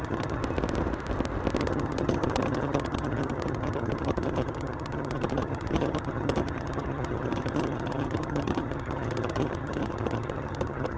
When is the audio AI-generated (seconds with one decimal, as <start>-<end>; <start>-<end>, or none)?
0.0-0.4; 1.6-11.0